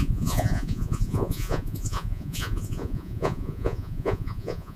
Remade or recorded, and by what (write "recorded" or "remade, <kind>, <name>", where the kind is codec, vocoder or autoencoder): remade, vocoder, Vocos